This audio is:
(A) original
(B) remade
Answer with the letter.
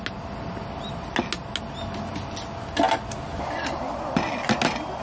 A